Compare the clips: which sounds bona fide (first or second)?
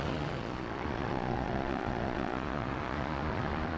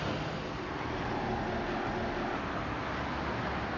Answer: second